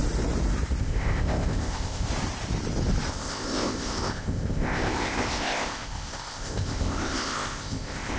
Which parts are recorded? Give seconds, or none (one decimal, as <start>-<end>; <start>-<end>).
0.0-0.8; 2.1-3.1